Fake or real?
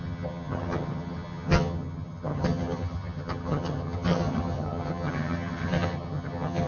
fake